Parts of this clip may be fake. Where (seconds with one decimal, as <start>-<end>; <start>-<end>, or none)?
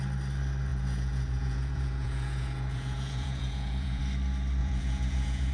0.7-4.0; 4.6-5.5